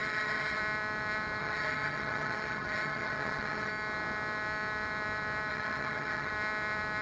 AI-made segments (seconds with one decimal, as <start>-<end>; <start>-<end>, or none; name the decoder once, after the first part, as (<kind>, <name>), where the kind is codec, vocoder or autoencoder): 0.0-0.6 (vocoder, HiFi-GAN); 1.4-3.7; 5.5-6.3